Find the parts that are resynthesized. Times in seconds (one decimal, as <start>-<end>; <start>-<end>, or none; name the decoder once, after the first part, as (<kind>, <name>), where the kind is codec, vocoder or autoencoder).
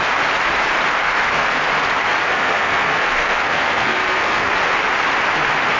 1.0-1.6 (codec, SNAC); 2.3-4.5